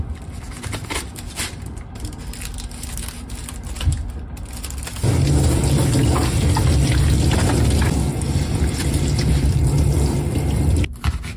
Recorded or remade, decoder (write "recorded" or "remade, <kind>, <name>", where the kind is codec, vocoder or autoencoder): recorded